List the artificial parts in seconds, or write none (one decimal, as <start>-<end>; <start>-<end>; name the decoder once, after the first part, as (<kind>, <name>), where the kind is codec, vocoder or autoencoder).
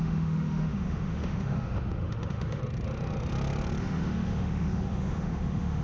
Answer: 0.0-2.6 (autoencoder, DAC-VAE); 3.8-5.8